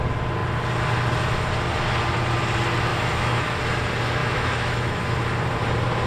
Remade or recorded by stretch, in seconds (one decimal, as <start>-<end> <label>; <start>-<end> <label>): 0.0-2.9 recorded; 2.9-3.6 remade; 3.6-4.2 recorded; 4.2-5.0 remade; 5.0-6.1 recorded